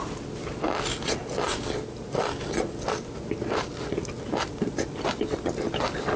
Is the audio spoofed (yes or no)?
no